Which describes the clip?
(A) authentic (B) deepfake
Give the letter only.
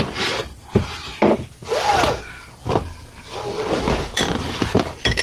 B